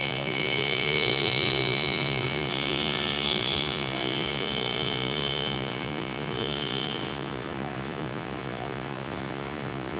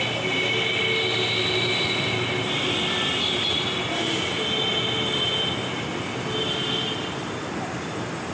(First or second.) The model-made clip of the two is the first